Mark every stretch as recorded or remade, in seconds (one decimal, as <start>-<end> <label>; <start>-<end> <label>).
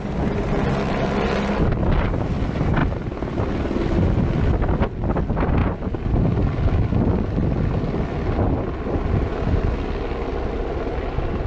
0.0-11.5 recorded